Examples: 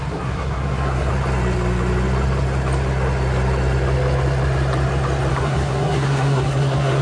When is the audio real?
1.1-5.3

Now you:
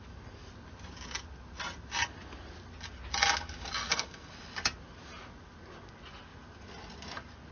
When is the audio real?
0.0-3.8; 4.3-7.5

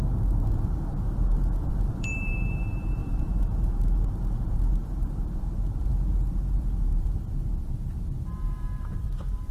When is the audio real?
5.9-6.6

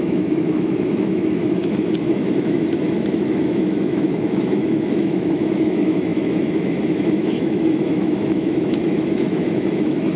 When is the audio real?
none

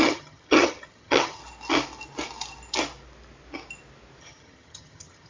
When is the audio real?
1.4-4.2